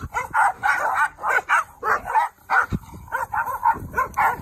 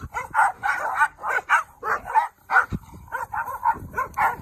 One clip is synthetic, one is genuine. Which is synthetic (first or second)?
second